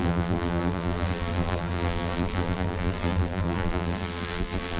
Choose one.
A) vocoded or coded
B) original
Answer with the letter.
A